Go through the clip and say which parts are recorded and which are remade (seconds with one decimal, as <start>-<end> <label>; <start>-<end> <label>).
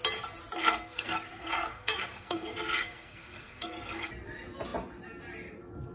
0.0-0.6 recorded; 0.6-4.1 remade; 4.1-5.9 recorded